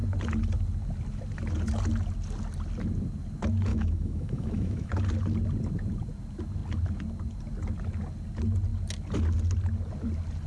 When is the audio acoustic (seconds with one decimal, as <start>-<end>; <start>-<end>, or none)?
0.0-3.7; 4.9-10.5